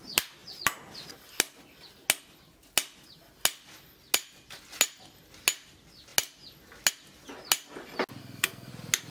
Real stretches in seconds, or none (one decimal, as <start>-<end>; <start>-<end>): 0.0-8.2; 8.7-9.1